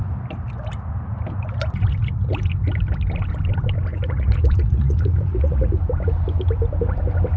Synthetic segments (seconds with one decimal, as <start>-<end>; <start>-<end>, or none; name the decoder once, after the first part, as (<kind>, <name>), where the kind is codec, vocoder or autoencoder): 3.9-5.8 (vocoder, Vocos)